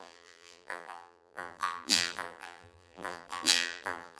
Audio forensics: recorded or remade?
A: remade